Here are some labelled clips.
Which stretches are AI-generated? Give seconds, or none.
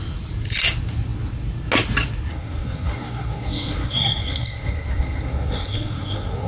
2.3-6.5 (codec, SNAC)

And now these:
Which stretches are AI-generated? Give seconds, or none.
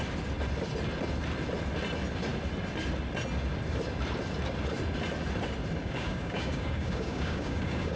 5.8-8.0 (codec, DAC)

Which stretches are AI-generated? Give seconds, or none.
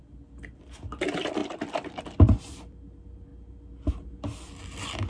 none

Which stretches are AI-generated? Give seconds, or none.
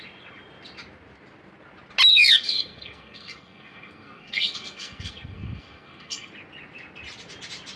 2.1-6.3 (codec, SNAC)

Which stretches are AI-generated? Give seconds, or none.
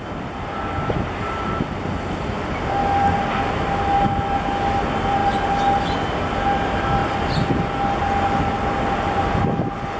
none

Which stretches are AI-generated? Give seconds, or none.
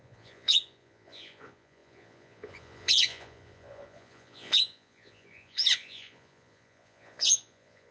0.0-7.9 (vocoder, Vocos)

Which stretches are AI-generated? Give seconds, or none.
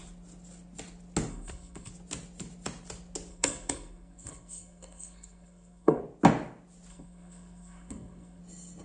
1.3-1.9 (codec, SNAC); 3.3-6.0; 6.9-8.4